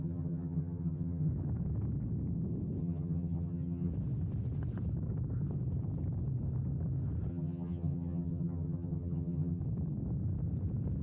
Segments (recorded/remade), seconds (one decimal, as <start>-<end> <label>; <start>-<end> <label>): 0.0-1.3 remade; 1.3-2.8 recorded; 2.8-3.9 remade; 3.9-7.3 recorded; 7.3-9.6 remade; 9.6-11.0 recorded